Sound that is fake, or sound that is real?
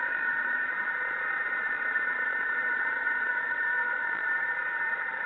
fake